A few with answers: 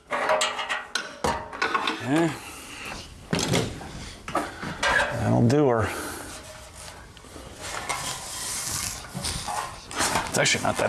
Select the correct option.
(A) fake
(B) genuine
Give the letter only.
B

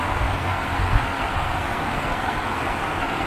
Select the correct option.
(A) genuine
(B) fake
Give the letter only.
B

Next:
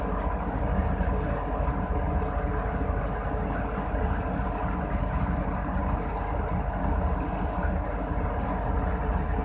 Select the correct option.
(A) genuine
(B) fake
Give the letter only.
A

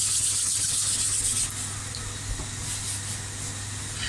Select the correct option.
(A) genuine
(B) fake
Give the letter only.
A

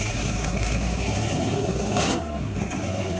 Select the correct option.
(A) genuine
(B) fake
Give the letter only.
B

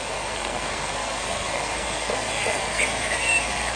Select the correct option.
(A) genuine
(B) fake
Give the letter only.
B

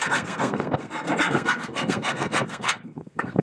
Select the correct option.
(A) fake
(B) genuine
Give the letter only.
A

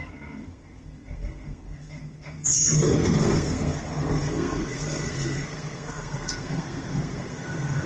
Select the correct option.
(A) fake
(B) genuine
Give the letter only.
A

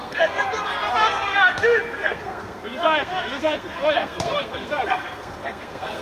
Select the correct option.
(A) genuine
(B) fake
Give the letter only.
B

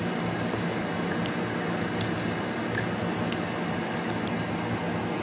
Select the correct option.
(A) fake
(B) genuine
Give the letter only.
B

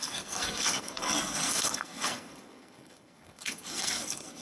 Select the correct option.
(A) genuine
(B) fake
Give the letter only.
B